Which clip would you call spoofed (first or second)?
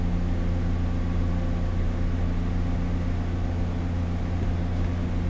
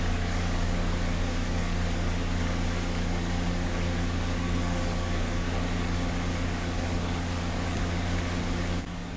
second